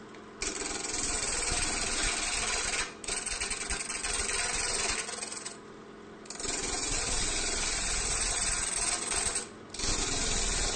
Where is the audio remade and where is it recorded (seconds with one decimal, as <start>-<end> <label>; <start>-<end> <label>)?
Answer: 0.0-6.6 recorded; 6.6-7.2 remade; 7.2-10.8 recorded